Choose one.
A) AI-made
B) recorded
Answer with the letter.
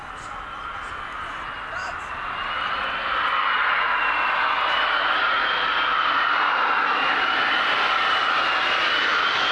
B